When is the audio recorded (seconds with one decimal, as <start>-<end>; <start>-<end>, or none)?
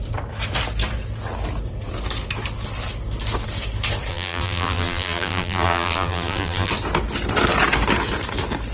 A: 0.0-4.1; 6.7-8.7